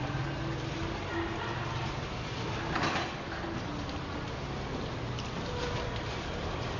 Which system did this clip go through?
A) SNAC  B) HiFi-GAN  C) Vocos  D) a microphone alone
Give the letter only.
D